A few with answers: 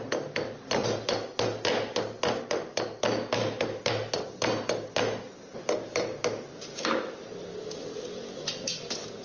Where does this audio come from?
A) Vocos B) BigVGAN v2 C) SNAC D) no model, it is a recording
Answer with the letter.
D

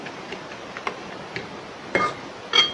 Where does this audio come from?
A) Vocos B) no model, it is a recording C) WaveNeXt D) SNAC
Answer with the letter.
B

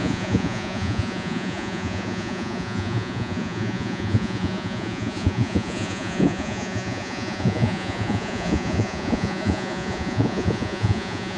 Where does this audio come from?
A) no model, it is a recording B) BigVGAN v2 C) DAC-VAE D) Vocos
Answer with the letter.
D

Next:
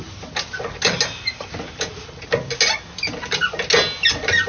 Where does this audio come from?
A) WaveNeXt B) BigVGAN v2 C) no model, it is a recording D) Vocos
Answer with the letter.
C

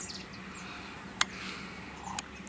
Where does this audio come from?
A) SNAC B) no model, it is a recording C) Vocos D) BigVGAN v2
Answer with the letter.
B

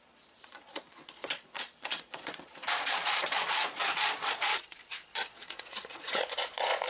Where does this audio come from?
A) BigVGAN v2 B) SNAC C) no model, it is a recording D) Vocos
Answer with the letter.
D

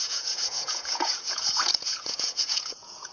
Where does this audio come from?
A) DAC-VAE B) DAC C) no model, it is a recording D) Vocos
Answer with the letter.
D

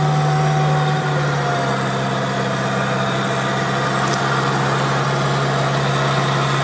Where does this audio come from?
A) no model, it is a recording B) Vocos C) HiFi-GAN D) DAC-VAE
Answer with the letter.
A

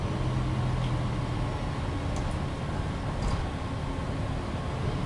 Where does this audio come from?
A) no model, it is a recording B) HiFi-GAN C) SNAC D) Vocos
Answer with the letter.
A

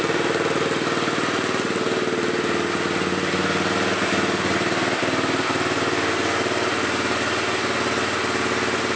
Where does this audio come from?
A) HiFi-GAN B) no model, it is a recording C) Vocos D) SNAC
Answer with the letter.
B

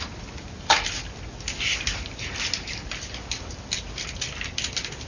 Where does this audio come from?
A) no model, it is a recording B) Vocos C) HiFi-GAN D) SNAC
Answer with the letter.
A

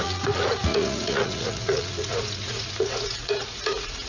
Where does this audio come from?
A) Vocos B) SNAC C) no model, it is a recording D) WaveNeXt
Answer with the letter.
A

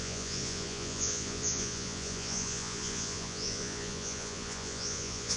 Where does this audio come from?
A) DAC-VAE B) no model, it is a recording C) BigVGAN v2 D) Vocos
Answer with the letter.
D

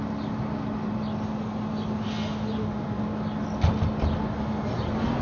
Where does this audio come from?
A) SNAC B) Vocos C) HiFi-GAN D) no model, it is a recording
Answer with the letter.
D